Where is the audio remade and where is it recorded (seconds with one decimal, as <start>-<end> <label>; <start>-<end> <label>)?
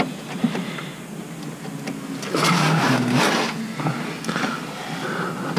0.0-5.6 recorded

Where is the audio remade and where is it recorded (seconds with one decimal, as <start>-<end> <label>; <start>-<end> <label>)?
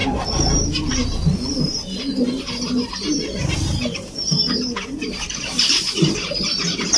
0.0-7.0 recorded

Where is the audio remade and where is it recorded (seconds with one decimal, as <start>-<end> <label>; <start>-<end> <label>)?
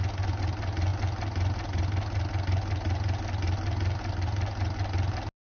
0.0-5.4 recorded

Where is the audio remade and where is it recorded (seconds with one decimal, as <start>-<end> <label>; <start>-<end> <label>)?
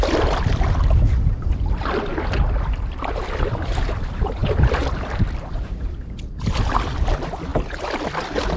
0.0-8.6 remade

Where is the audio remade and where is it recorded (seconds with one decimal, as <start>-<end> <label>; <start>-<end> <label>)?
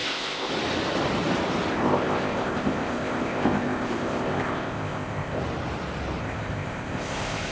0.0-0.5 remade; 0.5-1.7 recorded; 1.7-5.4 remade; 5.4-6.2 recorded; 6.2-7.5 remade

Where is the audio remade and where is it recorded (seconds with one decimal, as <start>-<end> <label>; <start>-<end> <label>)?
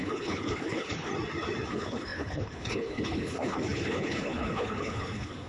0.0-1.1 remade; 1.1-1.7 recorded; 1.7-5.5 remade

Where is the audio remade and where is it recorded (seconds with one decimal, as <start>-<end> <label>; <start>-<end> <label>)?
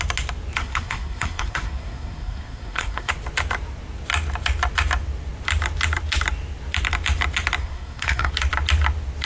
0.0-0.6 recorded; 0.6-3.1 remade; 3.1-7.6 recorded; 7.6-8.3 remade; 8.3-9.3 recorded